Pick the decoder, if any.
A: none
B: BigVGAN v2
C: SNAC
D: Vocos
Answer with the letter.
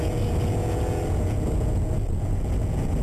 D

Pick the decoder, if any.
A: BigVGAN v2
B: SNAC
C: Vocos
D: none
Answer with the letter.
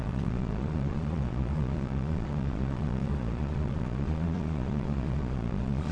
C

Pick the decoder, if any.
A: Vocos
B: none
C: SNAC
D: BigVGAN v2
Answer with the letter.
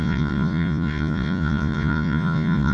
A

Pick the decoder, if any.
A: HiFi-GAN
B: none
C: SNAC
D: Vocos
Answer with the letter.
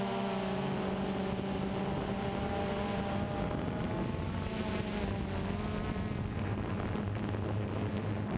B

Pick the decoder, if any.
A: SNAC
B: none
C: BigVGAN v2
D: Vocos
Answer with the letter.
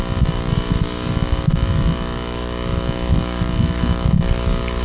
B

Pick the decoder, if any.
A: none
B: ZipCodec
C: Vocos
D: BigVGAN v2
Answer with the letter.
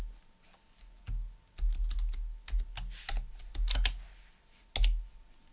A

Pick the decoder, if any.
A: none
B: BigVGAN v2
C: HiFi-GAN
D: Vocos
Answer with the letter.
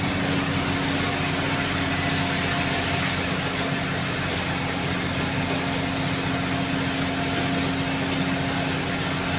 A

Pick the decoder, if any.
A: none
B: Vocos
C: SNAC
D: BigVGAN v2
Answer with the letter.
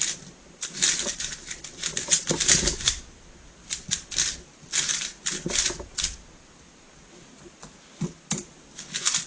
A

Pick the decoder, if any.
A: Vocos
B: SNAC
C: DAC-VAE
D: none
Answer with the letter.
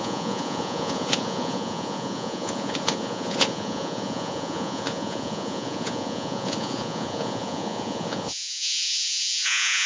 A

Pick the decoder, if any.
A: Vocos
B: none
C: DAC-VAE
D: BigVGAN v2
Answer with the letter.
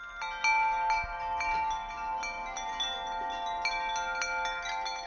B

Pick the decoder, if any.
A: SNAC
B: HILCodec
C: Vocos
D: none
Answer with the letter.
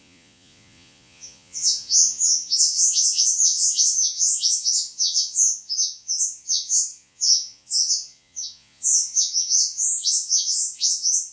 C